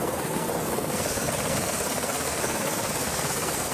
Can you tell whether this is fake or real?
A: fake